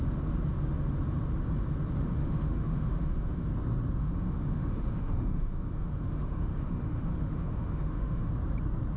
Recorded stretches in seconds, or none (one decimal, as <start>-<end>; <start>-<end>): 0.0-2.2; 3.5-4.0; 8.3-9.0

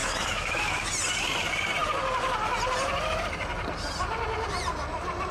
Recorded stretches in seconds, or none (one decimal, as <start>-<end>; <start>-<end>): 0.9-5.3

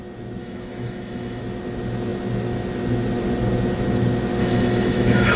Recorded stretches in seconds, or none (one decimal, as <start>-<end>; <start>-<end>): 0.0-0.4; 1.4-4.4

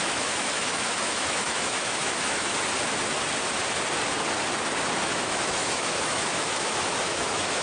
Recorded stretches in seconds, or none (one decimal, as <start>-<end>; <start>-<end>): 2.5-5.0

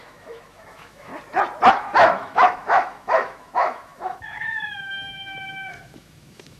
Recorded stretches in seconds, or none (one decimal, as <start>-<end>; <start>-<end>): 1.1-1.7

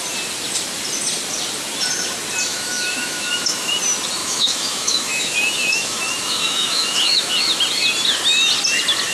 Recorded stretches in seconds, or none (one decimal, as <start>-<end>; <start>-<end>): 0.0-2.5; 3.7-4.2; 7.3-9.1